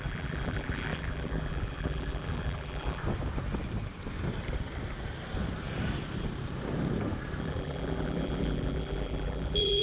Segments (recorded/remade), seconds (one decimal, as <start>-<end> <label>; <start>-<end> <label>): 0.0-3.0 remade; 3.0-7.4 recorded; 7.4-9.8 remade